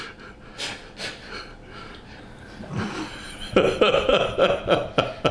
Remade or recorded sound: remade